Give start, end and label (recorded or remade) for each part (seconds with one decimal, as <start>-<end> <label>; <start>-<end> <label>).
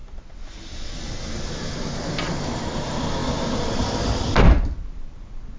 0.0-5.6 recorded